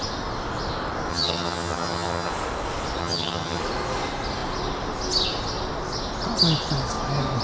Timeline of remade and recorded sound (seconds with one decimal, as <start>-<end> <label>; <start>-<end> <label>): 0.0-1.1 recorded; 1.1-2.3 remade; 2.3-3.0 recorded; 3.0-3.6 remade; 3.6-7.4 recorded